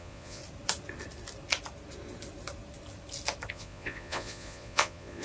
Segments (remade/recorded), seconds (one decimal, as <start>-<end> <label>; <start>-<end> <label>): 0.0-0.4 remade; 0.4-3.5 recorded; 3.5-5.2 remade